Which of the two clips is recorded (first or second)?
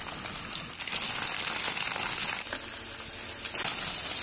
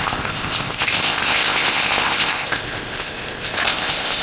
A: first